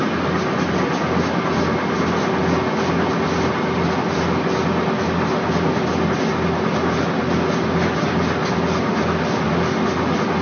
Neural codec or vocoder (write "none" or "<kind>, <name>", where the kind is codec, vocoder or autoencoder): none